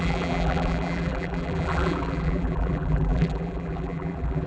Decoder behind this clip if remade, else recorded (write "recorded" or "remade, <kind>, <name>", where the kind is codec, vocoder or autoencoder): remade, vocoder, BigVGAN v2